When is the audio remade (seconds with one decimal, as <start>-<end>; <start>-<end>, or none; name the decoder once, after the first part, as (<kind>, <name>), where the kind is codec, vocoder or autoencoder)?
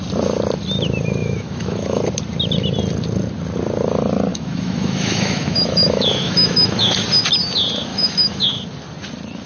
1.2-2.0 (autoencoder, DAC-VAE); 4.3-7.0; 7.9-8.6